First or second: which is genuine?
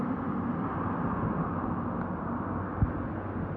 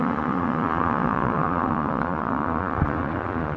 first